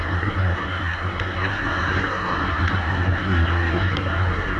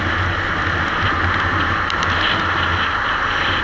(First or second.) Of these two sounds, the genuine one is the second